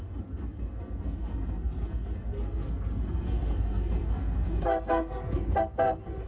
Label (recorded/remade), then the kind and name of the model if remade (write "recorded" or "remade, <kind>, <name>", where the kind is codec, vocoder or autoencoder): remade, codec, SNAC